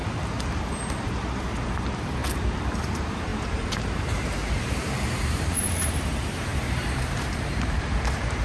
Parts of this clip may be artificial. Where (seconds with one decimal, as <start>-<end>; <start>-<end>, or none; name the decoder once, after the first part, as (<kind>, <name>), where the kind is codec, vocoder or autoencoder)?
0.6-2.2 (vocoder, BigVGAN v2); 2.8-8.4